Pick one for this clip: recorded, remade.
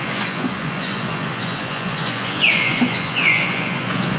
remade